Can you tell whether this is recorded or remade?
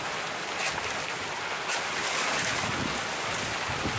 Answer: recorded